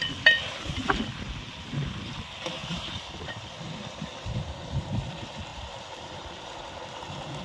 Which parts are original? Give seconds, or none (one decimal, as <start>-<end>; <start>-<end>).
2.2-2.6; 4.9-5.5; 6.4-7.4